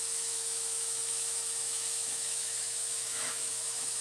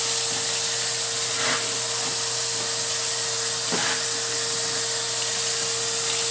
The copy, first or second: first